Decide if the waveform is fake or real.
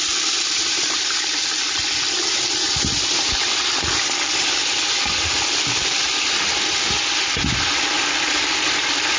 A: fake